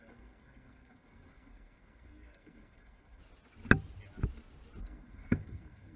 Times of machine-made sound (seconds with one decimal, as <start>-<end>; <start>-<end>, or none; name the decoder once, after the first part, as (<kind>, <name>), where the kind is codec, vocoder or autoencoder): 0.0-3.2 (codec, SNAC); 4.8-6.0